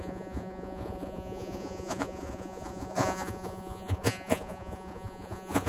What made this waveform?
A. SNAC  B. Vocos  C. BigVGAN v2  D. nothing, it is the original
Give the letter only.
B